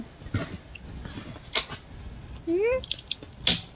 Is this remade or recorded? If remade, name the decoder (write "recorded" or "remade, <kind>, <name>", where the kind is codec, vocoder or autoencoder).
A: recorded